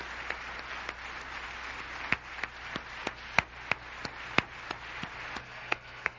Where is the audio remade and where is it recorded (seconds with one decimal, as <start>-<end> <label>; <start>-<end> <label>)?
0.0-5.4 recorded; 5.4-6.2 remade